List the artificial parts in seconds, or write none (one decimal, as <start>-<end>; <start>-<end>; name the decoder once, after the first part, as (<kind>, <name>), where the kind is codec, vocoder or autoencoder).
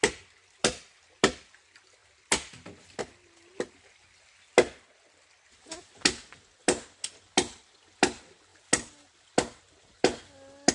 none